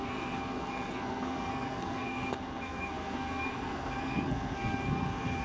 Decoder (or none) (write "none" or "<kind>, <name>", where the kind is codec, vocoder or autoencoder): codec, SNAC